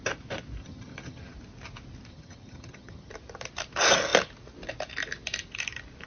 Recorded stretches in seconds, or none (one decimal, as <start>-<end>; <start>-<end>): 0.0-0.6; 1.3-2.1; 3.1-6.1